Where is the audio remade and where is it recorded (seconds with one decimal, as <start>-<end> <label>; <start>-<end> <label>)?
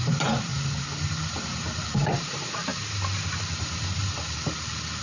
0.0-0.5 remade; 0.5-2.2 recorded; 2.2-4.0 remade; 4.0-5.0 recorded